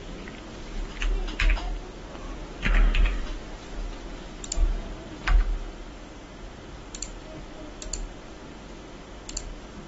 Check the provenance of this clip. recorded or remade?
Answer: recorded